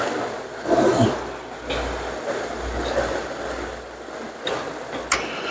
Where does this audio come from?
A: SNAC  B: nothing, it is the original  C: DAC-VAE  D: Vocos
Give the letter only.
B